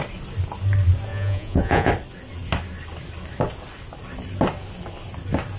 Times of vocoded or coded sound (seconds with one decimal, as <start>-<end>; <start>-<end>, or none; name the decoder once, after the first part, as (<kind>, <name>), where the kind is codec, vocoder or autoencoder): 1.1-1.9 (vocoder, Vocos)